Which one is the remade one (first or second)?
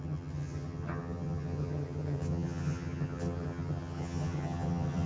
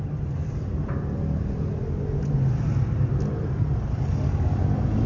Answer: first